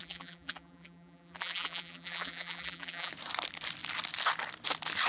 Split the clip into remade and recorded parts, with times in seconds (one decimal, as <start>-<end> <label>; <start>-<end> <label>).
0.0-3.1 remade; 3.1-5.1 recorded